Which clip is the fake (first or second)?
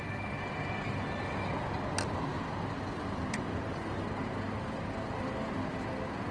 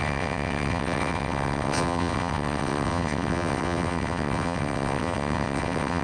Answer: second